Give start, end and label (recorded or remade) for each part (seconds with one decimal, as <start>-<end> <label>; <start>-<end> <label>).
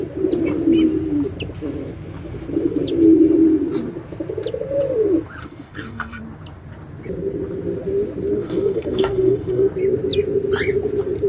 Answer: 0.0-5.4 recorded; 5.4-6.2 remade; 6.2-8.4 recorded; 8.4-9.7 remade; 9.7-11.3 recorded